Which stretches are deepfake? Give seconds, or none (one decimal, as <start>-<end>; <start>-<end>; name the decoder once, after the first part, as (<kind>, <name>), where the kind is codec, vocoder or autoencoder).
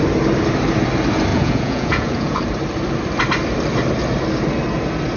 1.3-2.4 (vocoder, Vocos)